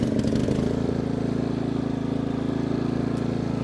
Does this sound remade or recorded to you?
recorded